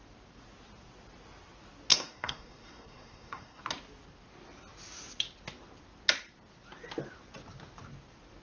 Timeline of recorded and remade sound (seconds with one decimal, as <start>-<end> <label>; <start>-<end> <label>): 0.0-1.9 recorded; 1.9-3.6 remade; 3.6-8.4 recorded

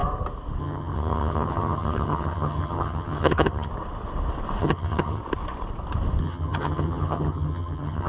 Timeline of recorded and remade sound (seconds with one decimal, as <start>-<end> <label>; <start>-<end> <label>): 0.0-0.6 recorded; 0.6-3.7 remade; 3.7-4.6 recorded; 4.6-5.2 remade; 5.2-6.2 recorded; 6.2-8.1 remade

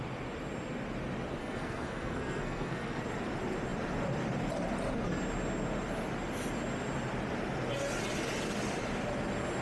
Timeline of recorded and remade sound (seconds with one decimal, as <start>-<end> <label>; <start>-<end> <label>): 0.0-1.4 recorded; 1.4-3.0 remade; 3.0-9.6 recorded